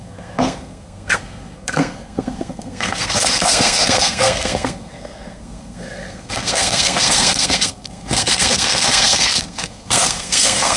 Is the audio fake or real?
fake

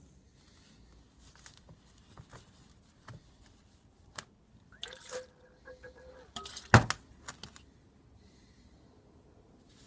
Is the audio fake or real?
real